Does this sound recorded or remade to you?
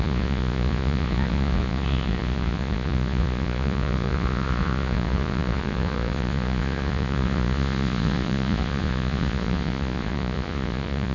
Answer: remade